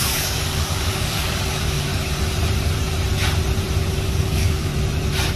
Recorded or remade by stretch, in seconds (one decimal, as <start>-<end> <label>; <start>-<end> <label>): 0.0-1.9 remade; 1.9-3.9 recorded; 3.9-4.7 remade; 4.7-5.4 recorded